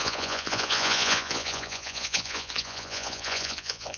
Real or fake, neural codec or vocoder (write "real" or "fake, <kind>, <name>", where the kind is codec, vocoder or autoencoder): fake, vocoder, Vocos